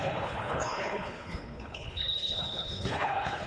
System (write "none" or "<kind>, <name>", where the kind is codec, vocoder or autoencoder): codec, HILCodec